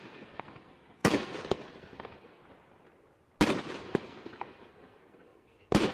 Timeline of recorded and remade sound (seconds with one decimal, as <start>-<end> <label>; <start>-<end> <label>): 0.0-2.4 remade; 2.4-3.8 recorded; 3.8-5.9 remade